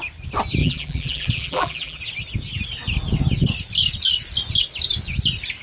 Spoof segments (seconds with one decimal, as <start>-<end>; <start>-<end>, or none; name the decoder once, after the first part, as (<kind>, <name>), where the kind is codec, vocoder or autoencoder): 0.6-2.0 (vocoder, BigVGAN v2)